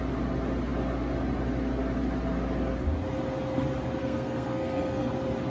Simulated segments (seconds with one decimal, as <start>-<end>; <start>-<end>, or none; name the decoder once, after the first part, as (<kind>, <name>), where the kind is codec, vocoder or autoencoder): 4.0-5.1 (codec, SNAC)